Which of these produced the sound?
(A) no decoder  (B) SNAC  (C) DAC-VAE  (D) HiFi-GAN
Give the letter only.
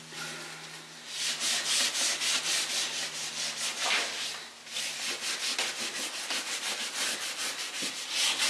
A